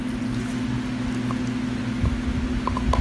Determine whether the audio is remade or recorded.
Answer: recorded